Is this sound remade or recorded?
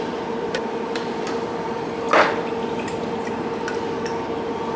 recorded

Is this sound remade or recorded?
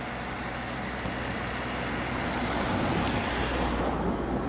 recorded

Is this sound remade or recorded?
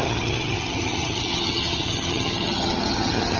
remade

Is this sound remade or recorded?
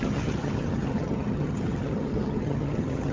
remade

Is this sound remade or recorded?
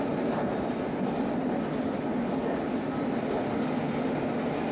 recorded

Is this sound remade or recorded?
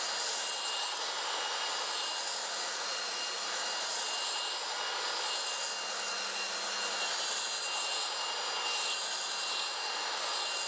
recorded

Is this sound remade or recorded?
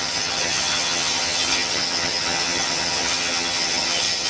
remade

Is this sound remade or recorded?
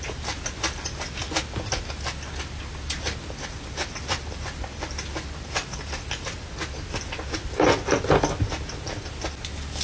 recorded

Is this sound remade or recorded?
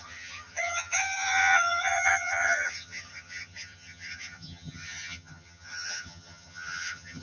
remade